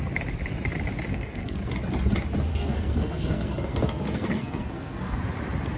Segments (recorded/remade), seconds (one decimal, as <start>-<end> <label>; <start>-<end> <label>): 0.0-1.1 recorded; 1.1-1.7 remade; 1.7-2.5 recorded; 2.5-5.2 remade; 5.2-5.8 recorded